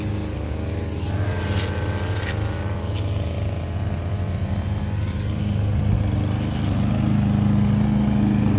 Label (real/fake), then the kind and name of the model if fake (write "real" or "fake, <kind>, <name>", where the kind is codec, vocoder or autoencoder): real